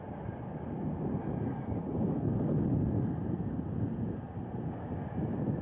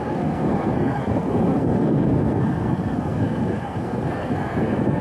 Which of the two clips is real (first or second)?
first